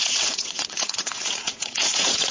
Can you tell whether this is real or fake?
fake